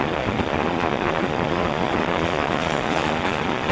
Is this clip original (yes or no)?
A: no